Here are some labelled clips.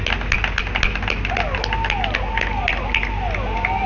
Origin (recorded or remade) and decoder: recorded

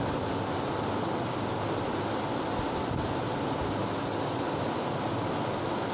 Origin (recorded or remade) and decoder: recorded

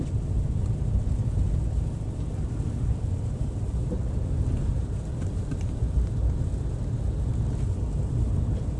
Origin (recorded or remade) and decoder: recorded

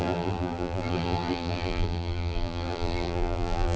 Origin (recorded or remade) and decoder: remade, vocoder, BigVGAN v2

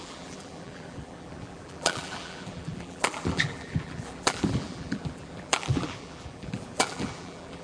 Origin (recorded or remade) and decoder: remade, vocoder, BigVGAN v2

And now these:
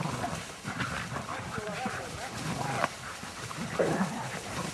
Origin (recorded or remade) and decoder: remade, vocoder, BigVGAN v2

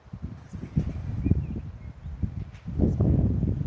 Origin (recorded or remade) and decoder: recorded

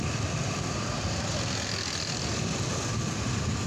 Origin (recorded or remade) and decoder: recorded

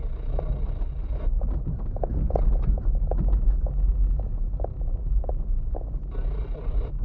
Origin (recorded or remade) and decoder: recorded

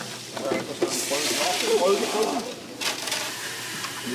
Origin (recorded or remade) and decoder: recorded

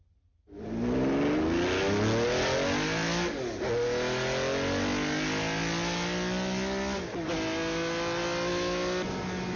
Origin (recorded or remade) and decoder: recorded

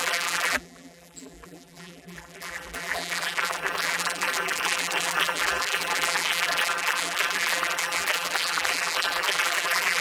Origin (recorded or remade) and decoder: remade, vocoder, BigVGAN v2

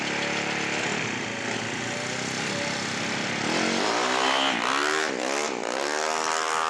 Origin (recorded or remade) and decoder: recorded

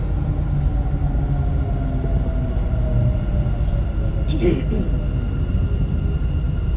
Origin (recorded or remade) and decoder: recorded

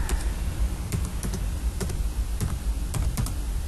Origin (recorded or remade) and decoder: remade, vocoder, BigVGAN v2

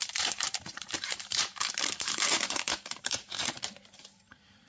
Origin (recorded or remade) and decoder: remade, vocoder, BigVGAN v2